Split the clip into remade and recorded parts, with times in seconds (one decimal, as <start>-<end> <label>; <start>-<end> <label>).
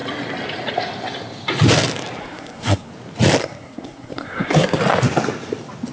0.0-2.2 recorded; 2.2-2.9 remade; 2.9-3.4 recorded; 3.4-4.8 remade; 4.8-5.9 recorded